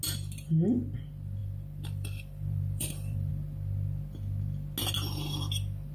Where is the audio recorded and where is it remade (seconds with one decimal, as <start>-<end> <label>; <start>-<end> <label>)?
0.0-1.4 recorded; 1.4-3.3 remade; 3.3-5.9 recorded

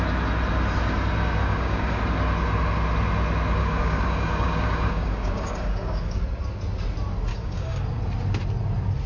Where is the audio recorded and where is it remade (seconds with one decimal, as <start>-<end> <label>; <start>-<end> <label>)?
0.0-1.4 recorded; 1.4-2.0 remade; 2.0-3.6 recorded; 3.6-6.2 remade; 6.2-7.3 recorded; 7.3-7.8 remade; 7.8-9.1 recorded

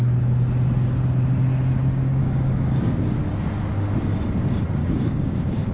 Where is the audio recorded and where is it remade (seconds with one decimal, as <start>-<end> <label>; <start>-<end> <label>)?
0.0-2.2 recorded; 2.2-3.1 remade; 3.1-4.8 recorded; 4.8-5.7 remade

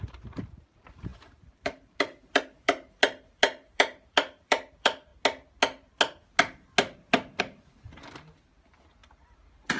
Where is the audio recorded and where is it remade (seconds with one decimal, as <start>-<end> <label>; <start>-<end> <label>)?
0.0-5.1 remade; 5.1-7.4 recorded; 7.4-9.8 remade